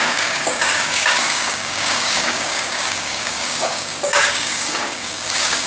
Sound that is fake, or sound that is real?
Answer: fake